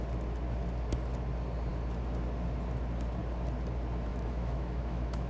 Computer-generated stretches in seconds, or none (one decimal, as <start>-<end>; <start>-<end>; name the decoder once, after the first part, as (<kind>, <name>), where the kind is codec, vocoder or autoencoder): 4.1-5.3 (autoencoder, DAC-VAE)